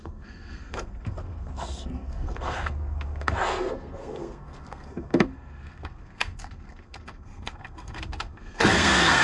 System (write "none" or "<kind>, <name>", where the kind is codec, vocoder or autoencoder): codec, SNAC